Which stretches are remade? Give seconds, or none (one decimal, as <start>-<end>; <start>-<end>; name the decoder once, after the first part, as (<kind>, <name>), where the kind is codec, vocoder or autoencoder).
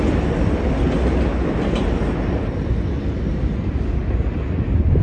none